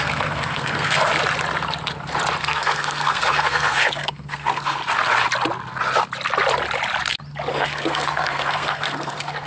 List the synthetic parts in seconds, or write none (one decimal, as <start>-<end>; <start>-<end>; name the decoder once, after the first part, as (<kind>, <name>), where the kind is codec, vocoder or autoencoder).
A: 0.0-1.1 (codec, SNAC); 2.4-4.8; 7.5-9.5

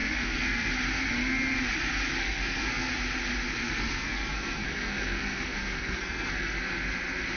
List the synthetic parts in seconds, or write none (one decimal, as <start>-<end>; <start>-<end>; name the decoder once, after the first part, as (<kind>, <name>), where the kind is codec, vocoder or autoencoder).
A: 0.0-0.7 (codec, SNAC); 2.2-2.9; 3.5-6.6

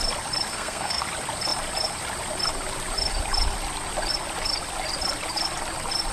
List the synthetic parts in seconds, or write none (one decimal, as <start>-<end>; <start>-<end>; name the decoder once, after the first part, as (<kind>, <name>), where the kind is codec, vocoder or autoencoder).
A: 0.5-1.0 (codec, SNAC)

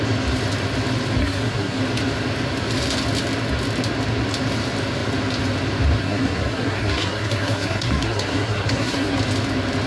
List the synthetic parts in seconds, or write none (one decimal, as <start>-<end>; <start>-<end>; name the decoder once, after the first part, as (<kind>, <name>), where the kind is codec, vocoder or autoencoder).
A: 1.2-1.8 (codec, SNAC); 6.0-9.2

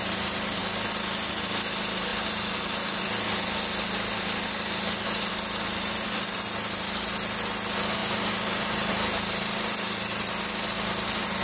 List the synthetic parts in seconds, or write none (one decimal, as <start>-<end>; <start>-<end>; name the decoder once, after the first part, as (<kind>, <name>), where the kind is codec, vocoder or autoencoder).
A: none

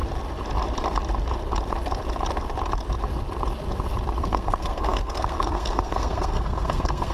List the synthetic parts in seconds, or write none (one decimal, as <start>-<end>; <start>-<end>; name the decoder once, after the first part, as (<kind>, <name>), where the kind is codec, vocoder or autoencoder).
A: 4.2-7.1 (codec, SNAC)

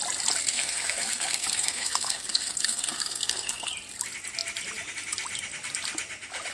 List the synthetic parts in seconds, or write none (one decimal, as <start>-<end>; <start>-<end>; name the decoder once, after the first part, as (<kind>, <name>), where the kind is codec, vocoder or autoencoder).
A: 0.4-3.7 (codec, SNAC)

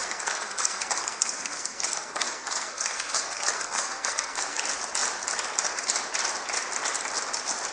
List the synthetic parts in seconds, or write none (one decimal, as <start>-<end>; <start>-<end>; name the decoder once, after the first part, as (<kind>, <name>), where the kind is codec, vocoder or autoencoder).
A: 0.0-4.6 (codec, SNAC)